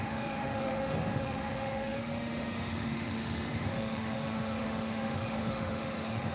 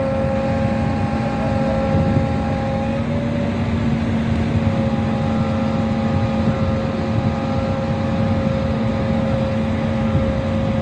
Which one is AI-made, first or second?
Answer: first